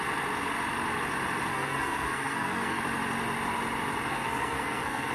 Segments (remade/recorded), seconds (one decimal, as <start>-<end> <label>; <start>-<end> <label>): 0.0-1.5 recorded; 1.5-2.8 remade; 2.8-4.1 recorded; 4.1-5.1 remade